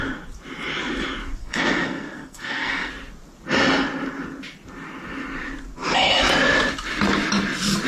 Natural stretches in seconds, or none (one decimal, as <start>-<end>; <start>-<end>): 0.0-1.4; 2.9-7.9